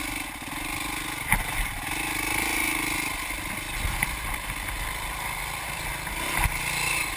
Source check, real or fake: real